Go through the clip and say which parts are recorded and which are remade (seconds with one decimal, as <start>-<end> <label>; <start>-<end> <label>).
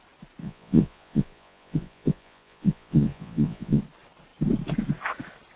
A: 0.0-0.4 recorded; 0.4-3.8 remade; 3.8-5.6 recorded